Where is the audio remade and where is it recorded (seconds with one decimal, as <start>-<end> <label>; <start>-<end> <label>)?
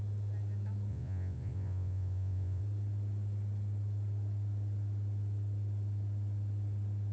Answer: 0.0-0.9 recorded; 0.9-2.6 remade; 2.6-7.1 recorded